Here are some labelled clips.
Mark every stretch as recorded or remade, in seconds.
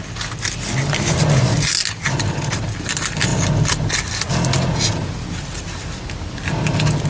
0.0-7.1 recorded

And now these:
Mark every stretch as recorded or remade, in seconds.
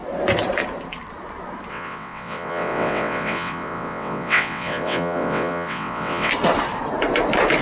0.0-1.7 recorded; 1.7-6.3 remade; 6.3-7.6 recorded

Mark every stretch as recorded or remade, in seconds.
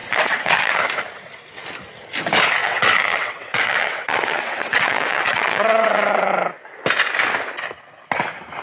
0.0-0.8 remade; 0.8-2.6 recorded; 2.6-6.3 remade; 6.3-8.6 recorded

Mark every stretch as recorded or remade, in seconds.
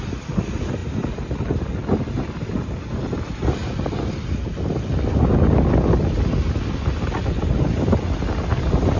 0.0-9.0 recorded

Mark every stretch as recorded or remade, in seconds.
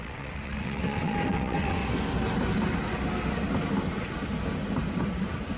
0.0-1.8 remade; 1.8-5.6 recorded